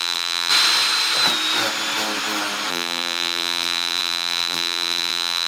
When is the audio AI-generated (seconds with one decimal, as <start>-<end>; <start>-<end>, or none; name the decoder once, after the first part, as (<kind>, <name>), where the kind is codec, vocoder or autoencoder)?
0.0-0.5 (vocoder, BigVGAN v2); 2.7-5.5